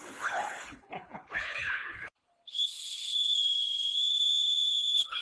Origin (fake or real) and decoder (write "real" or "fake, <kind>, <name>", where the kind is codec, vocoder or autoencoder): fake, codec, HILCodec